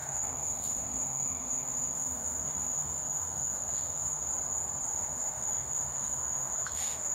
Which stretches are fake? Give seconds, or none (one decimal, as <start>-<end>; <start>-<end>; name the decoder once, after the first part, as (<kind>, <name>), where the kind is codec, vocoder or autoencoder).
0.0-4.3 (autoencoder, DAC-VAE); 4.9-7.1